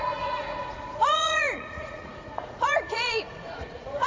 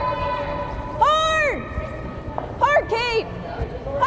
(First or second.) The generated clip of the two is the first